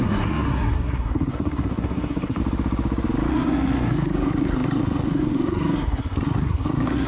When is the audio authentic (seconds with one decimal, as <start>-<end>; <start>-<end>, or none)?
2.4-3.3